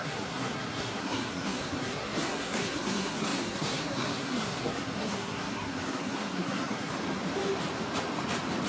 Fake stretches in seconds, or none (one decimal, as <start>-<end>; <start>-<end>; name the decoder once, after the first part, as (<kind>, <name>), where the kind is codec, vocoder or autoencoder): 0.0-6.9 (codec, SNAC)